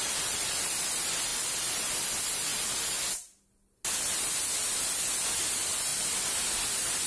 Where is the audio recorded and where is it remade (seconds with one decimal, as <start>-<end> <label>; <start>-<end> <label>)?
0.0-7.1 recorded